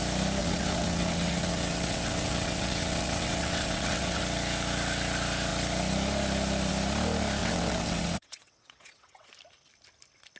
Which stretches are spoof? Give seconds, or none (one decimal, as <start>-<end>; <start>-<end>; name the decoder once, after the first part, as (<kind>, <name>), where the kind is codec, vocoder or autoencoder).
0.4-4.2 (vocoder, WaveNeXt); 7.4-9.3